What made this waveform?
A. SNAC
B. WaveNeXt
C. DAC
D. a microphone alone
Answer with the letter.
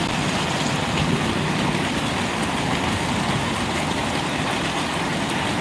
D